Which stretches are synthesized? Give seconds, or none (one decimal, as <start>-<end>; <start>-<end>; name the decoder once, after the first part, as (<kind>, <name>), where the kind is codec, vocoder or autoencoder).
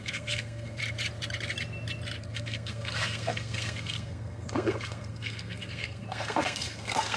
0.0-0.8 (codec, SNAC); 2.2-7.2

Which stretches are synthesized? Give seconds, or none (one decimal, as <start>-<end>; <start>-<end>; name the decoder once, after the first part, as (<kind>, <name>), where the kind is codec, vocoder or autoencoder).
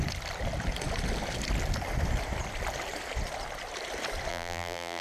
4.3-5.0 (vocoder, BigVGAN v2)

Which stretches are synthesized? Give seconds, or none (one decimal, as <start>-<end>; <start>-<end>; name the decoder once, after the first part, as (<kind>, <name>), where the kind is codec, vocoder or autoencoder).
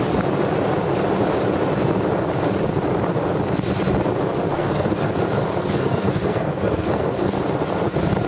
4.5-5.1 (codec, SNAC); 5.6-7.3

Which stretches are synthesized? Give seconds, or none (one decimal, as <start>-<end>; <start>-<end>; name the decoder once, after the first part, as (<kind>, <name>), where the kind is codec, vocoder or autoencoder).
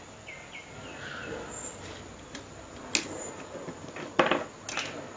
none